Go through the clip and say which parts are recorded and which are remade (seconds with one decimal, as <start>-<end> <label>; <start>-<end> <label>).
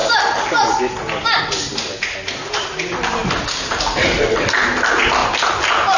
0.0-6.0 recorded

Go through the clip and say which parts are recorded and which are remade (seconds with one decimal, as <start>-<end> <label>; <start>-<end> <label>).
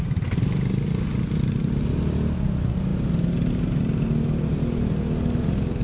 0.0-5.8 recorded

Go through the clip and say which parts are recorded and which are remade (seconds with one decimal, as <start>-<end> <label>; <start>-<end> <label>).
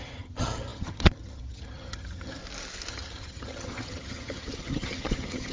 0.0-2.4 remade; 2.4-2.9 recorded; 2.9-5.5 remade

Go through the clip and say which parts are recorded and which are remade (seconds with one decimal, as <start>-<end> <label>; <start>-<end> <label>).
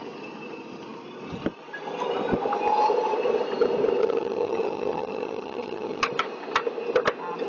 0.0-4.0 recorded; 4.0-6.0 remade; 6.0-7.5 recorded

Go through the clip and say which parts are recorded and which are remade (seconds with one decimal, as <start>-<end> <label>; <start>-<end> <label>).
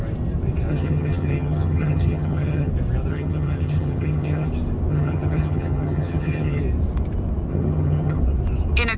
0.0-0.7 recorded; 0.7-2.7 remade; 2.7-3.1 recorded; 3.1-4.5 remade; 4.5-4.9 recorded; 4.9-6.6 remade; 6.6-7.5 recorded; 7.5-8.2 remade; 8.2-9.0 recorded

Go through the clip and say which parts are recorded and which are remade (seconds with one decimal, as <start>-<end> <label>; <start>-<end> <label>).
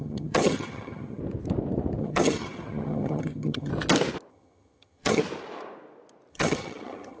0.0-1.2 remade; 1.2-2.0 recorded; 2.0-3.7 remade; 3.7-4.3 recorded; 4.3-5.2 remade; 5.2-6.3 recorded; 6.3-7.2 remade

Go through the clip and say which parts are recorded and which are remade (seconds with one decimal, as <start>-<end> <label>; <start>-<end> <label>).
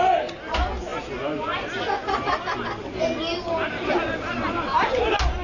0.0-5.4 recorded